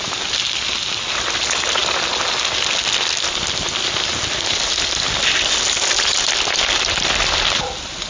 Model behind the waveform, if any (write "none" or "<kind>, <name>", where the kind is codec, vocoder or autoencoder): none